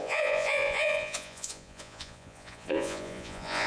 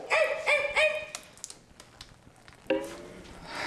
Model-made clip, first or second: first